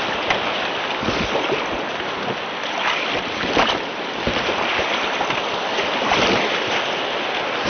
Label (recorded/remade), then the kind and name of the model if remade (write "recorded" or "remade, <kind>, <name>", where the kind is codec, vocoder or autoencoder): recorded